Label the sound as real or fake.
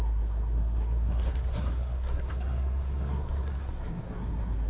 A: fake